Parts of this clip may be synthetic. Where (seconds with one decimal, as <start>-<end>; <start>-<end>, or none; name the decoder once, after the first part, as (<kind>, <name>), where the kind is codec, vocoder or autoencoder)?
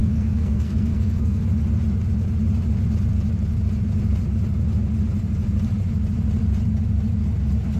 0.0-1.4 (codec, SNAC)